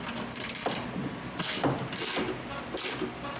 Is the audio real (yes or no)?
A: yes